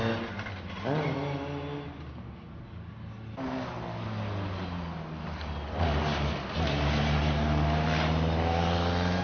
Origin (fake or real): real